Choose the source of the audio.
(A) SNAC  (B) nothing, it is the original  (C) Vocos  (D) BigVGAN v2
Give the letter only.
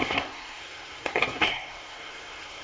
A